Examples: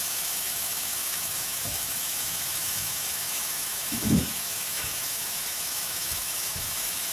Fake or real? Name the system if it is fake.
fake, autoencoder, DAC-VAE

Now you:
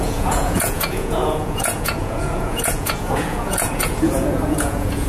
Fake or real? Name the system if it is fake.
fake, vocoder, Vocos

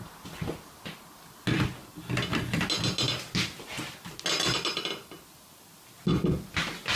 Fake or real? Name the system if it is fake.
real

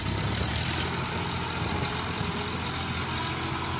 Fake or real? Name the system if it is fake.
real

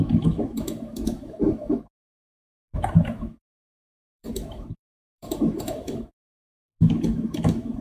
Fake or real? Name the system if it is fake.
fake, autoencoder, DAC-VAE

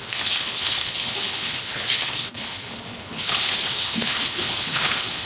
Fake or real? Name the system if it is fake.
fake, codec, HILCodec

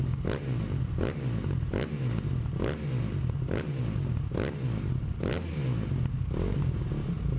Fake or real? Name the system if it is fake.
real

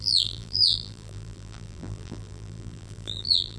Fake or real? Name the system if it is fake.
fake, vocoder, BigVGAN v2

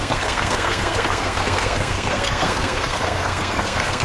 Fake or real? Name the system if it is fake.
fake, codec, SNAC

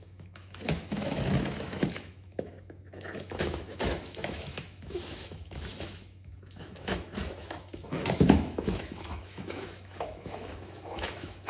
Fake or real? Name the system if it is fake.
fake, autoencoder, DAC-VAE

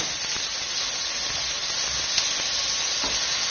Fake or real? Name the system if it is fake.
real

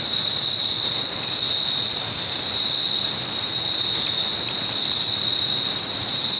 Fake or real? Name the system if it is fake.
real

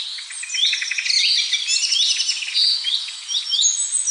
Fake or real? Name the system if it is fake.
real